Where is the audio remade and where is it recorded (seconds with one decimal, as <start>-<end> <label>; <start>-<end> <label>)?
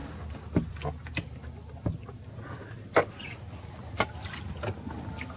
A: 0.0-5.4 recorded